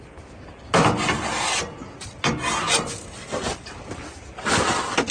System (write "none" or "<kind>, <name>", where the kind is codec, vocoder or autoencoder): none